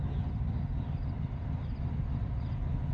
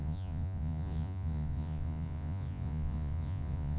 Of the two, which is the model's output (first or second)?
second